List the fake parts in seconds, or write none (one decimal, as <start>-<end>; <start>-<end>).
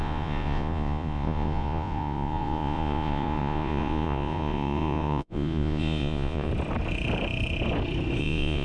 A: 0.0-6.5; 8.2-8.6